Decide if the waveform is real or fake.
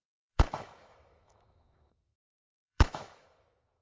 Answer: fake